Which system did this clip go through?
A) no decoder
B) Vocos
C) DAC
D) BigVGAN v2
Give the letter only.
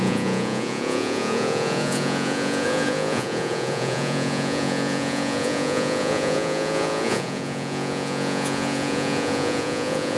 B